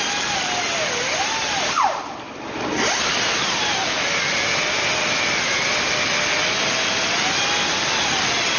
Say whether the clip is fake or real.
real